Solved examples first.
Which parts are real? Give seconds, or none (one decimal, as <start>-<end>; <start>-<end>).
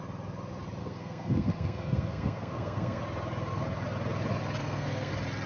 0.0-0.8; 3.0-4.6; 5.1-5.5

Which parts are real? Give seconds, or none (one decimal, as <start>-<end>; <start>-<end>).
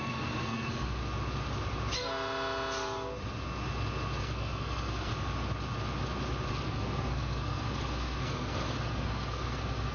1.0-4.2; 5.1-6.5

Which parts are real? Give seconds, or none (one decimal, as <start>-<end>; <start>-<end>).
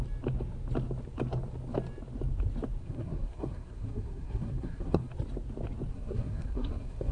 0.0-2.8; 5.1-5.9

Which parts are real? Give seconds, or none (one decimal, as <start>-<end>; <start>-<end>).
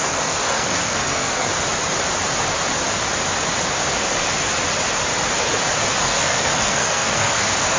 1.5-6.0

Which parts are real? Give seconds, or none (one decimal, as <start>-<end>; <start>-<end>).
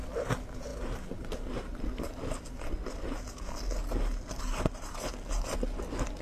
0.0-6.2